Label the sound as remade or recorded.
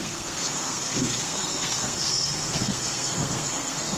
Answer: remade